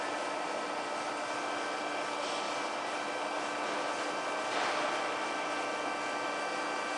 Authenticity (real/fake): real